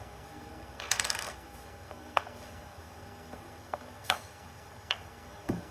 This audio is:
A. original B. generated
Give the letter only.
B